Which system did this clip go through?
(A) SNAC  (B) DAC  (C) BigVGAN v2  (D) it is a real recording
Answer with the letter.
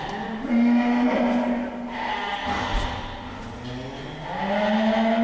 D